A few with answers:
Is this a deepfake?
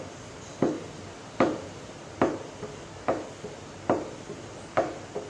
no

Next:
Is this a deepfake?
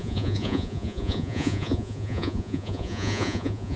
yes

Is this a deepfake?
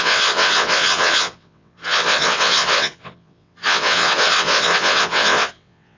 yes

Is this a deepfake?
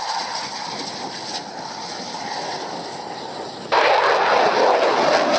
no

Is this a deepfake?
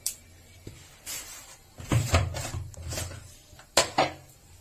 yes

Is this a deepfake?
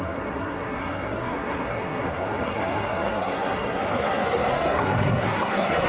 yes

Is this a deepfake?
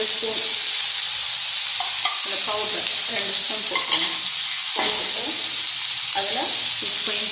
no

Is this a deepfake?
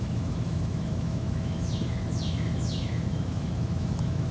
yes